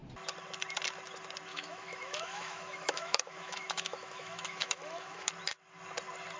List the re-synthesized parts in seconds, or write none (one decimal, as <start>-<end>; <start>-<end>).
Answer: 1.5-5.3